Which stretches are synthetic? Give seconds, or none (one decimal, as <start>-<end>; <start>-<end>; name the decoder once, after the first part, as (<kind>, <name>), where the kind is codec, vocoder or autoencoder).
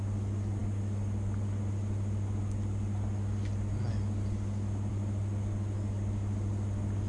none